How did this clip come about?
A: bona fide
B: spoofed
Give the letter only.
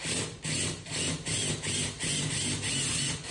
A